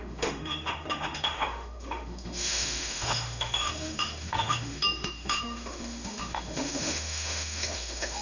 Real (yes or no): no